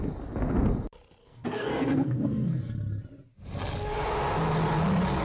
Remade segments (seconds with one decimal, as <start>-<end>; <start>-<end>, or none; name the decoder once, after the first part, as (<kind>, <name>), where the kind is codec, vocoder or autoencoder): 1.2-2.6 (codec, SNAC)